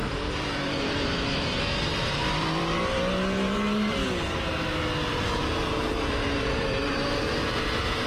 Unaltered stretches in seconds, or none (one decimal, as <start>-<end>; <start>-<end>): 4.0-5.1